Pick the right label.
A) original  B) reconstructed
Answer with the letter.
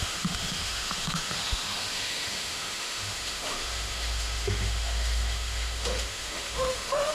B